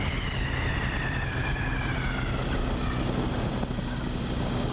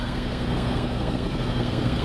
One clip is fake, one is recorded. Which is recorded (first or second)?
first